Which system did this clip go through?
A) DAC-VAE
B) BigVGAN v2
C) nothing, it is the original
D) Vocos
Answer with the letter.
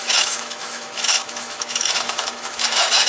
A